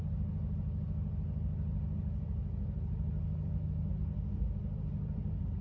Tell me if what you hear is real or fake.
real